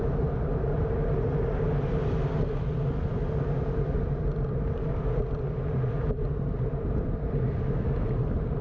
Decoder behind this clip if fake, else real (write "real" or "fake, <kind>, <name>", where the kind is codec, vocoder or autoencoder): real